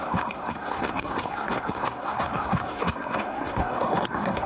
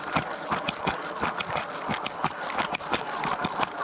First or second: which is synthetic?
first